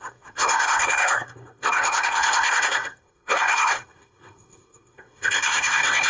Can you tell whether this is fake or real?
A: fake